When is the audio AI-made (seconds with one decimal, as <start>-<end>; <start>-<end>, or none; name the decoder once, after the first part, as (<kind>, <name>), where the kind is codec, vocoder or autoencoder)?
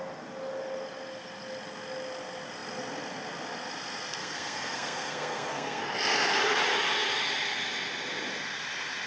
4.2-5.8 (codec, SNAC)